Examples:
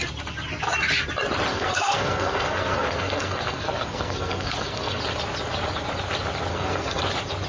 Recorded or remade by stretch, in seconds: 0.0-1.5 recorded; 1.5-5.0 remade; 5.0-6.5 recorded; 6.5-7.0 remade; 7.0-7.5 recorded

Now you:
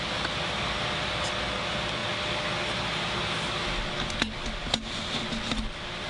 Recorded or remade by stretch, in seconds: 0.0-6.1 recorded

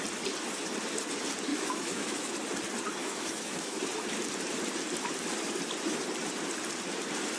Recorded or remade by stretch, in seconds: 0.0-1.5 recorded; 1.5-2.3 remade; 2.3-3.0 recorded; 3.0-3.8 remade; 3.8-7.4 recorded

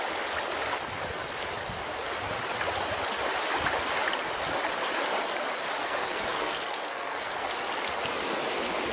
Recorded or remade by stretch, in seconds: 0.0-5.8 recorded; 5.8-7.5 remade; 7.5-8.9 recorded

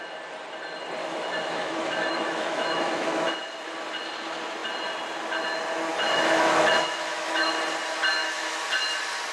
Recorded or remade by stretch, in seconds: 0.0-1.0 recorded; 1.0-3.4 remade; 3.4-5.9 recorded; 5.9-7.5 remade; 7.5-8.2 recorded; 8.2-8.7 remade; 8.7-9.3 recorded

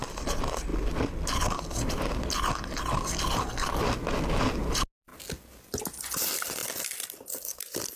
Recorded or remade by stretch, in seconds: 0.0-8.0 recorded